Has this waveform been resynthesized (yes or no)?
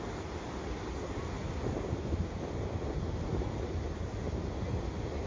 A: no